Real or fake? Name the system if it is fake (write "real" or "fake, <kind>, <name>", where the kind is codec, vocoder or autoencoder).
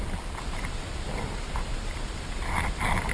real